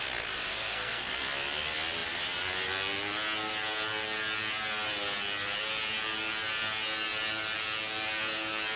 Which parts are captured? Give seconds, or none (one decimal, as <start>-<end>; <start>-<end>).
0.0-0.5; 1.1-8.8